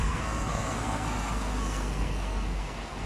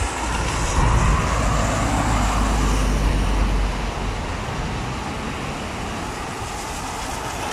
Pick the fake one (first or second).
first